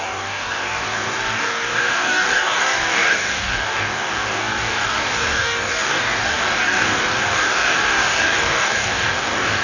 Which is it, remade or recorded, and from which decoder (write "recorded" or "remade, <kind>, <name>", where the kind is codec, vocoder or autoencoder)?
remade, codec, DAC